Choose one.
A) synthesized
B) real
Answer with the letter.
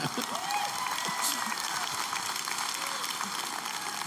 B